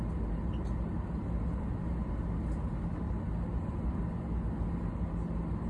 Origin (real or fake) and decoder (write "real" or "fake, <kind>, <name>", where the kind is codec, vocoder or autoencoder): real